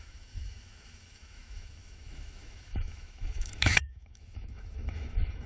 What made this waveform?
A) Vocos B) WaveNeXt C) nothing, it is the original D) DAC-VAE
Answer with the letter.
D